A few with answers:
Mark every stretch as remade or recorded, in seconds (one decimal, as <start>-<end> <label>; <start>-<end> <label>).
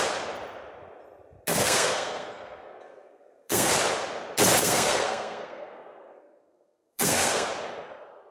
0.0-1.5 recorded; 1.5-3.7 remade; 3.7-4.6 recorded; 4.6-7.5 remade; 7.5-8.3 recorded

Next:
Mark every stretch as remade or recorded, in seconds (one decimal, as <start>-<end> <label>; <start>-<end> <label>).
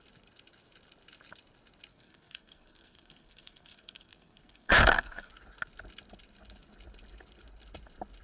0.0-1.9 recorded; 1.9-5.3 remade; 5.3-8.2 recorded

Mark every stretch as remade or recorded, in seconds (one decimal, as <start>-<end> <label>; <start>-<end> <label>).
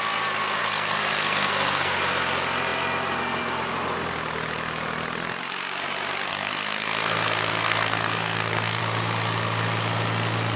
0.0-0.6 recorded; 0.6-2.0 remade; 2.0-6.3 recorded; 6.3-8.8 remade; 8.8-10.6 recorded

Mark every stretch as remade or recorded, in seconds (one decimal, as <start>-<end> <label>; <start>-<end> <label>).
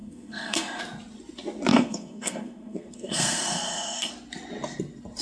0.0-0.8 remade; 0.8-1.7 recorded; 1.7-4.1 remade; 4.1-5.2 recorded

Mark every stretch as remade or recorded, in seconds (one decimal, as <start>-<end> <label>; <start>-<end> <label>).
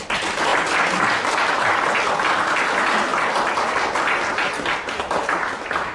0.0-5.9 recorded